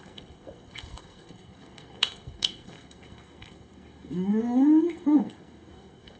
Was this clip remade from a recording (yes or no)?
yes